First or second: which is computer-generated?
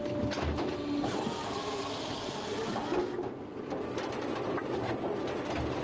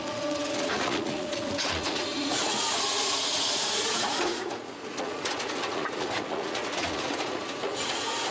second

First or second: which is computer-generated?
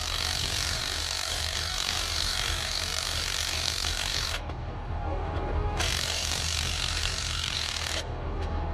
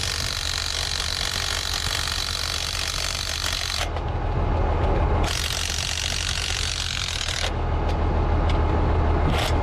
first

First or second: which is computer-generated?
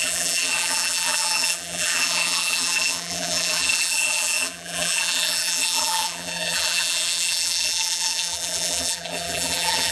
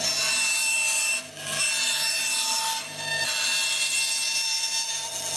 first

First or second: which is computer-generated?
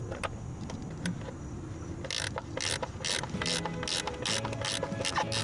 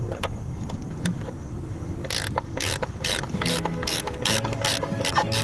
second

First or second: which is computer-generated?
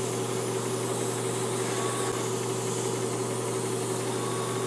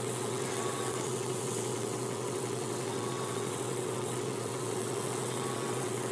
second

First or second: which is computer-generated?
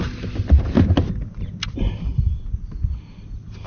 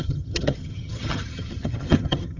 second